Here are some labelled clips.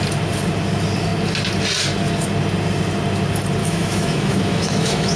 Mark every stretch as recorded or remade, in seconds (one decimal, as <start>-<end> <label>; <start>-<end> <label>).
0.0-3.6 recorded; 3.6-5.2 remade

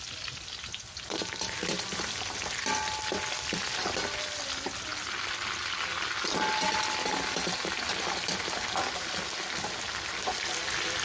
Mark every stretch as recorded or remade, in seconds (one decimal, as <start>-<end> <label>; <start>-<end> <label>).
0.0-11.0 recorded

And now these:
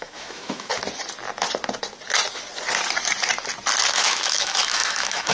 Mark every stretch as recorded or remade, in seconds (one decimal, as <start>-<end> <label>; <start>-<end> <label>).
0.0-0.7 remade; 0.7-3.9 recorded; 3.9-5.3 remade

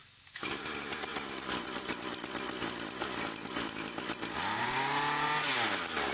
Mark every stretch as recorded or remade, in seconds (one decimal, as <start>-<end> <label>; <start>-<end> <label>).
0.0-0.6 remade; 0.6-6.1 recorded